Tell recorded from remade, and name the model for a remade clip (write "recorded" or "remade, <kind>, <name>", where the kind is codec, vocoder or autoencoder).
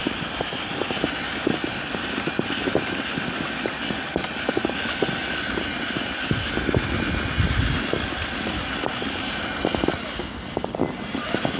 recorded